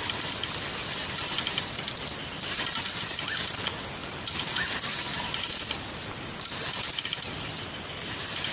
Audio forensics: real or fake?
real